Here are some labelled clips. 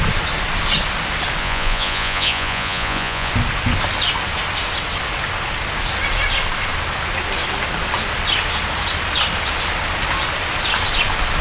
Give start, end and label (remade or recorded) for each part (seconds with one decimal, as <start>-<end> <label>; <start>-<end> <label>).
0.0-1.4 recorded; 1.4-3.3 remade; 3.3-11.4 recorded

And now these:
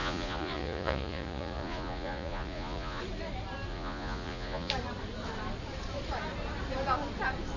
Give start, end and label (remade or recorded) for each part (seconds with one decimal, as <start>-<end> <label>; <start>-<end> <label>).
0.0-3.0 remade; 3.0-3.7 recorded; 3.7-4.7 remade; 4.7-7.6 recorded

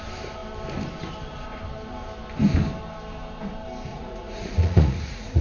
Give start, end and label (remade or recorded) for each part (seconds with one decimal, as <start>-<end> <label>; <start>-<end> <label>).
0.0-3.9 recorded; 3.9-5.4 remade

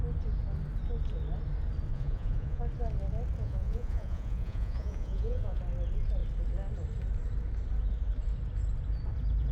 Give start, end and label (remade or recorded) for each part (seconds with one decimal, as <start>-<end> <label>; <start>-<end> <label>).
0.0-1.9 recorded; 1.9-2.6 remade; 2.6-3.4 recorded; 3.4-5.6 remade; 5.6-9.5 recorded

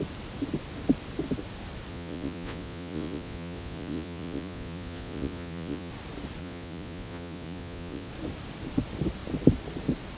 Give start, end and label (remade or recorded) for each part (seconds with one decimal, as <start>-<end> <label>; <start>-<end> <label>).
0.0-1.9 recorded; 1.9-5.9 remade; 5.9-6.4 recorded; 6.4-8.1 remade; 8.1-10.2 recorded